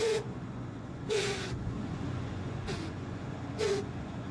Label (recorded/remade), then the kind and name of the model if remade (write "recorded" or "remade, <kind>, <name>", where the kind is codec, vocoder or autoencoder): remade, vocoder, Vocos